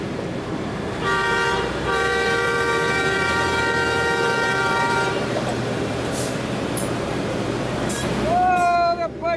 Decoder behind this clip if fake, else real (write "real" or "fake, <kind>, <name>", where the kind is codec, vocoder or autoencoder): fake, vocoder, BigVGAN v2